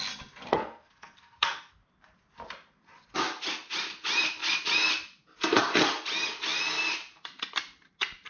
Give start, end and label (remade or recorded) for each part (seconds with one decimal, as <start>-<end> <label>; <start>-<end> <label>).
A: 0.0-0.5 recorded; 0.5-1.8 remade; 1.8-8.3 recorded